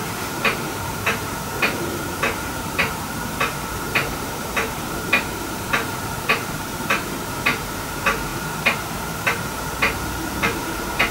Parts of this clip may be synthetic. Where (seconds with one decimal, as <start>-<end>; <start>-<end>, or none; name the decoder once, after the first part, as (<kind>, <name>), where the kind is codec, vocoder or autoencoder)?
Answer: 0.0-11.1 (vocoder, BigVGAN v2)